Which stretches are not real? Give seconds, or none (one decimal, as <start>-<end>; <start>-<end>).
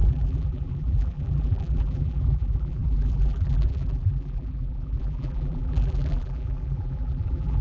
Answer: 0.0-7.6